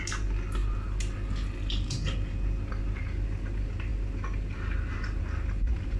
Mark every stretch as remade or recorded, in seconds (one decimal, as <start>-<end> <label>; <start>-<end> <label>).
0.0-6.0 recorded